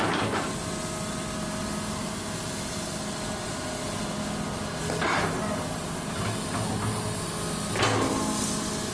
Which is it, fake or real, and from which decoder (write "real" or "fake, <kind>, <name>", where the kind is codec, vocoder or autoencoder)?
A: real